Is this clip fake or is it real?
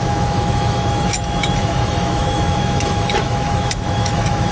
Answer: fake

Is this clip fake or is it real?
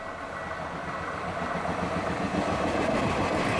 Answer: real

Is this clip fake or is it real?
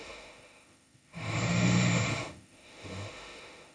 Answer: fake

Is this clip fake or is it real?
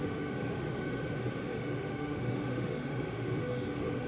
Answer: fake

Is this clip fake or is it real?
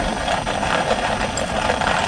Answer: real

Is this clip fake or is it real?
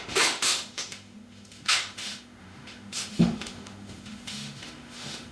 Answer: fake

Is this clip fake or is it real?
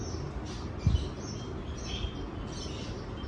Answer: real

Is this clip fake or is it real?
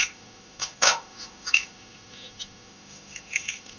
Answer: fake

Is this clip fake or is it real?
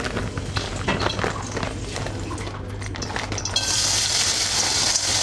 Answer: real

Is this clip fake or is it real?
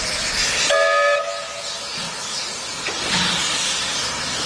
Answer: real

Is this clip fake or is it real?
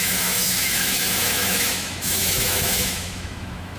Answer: fake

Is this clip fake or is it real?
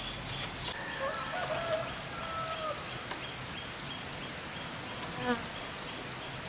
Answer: real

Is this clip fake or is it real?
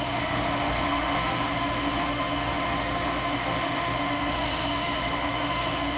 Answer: fake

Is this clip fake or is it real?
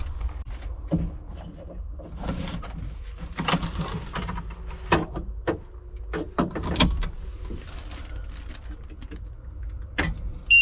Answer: real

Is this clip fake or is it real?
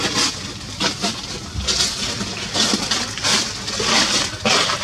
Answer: real